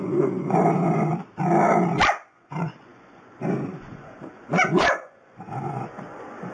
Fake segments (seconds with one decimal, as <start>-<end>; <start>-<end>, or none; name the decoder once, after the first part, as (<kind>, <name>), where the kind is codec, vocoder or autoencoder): 0.0-1.1 (vocoder, Vocos); 2.2-6.5